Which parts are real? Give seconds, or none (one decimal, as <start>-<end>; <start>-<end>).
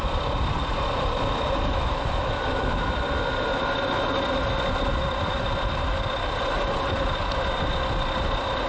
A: 3.5-5.0